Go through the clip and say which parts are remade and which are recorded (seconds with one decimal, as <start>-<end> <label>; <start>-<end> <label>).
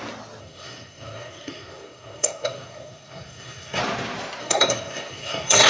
0.0-0.4 recorded; 0.4-3.8 remade; 3.8-4.4 recorded; 4.4-5.7 remade